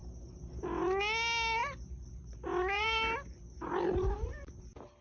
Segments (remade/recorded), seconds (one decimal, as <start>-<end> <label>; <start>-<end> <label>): 0.0-0.5 remade; 0.5-1.6 recorded; 1.6-4.6 remade; 4.6-5.0 recorded